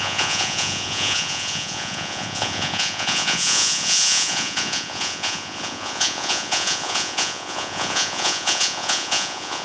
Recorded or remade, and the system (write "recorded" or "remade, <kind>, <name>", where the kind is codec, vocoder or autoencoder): remade, vocoder, Vocos